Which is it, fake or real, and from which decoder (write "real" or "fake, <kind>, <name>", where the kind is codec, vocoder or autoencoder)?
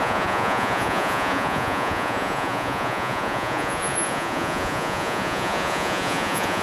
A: fake, vocoder, Vocos